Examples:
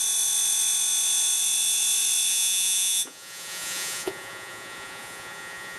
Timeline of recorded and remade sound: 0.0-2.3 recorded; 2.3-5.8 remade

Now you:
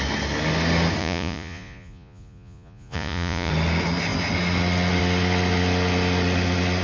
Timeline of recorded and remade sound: 0.0-1.0 recorded; 1.0-3.5 remade; 3.5-6.8 recorded

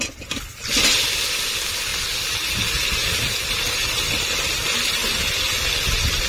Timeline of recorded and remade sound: 0.0-6.3 recorded

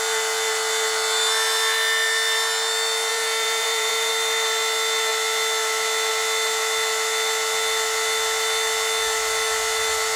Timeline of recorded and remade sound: 0.0-3.1 recorded; 3.1-4.1 remade; 4.1-10.2 recorded

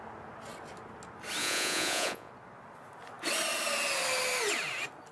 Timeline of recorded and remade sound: 0.0-1.4 recorded; 1.4-2.3 remade; 2.3-5.1 recorded